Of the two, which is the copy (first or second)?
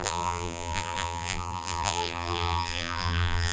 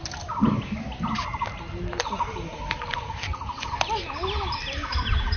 first